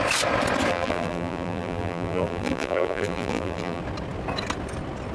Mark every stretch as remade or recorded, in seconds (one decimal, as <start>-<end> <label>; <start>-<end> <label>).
0.0-0.7 recorded; 0.7-3.8 remade; 3.8-5.1 recorded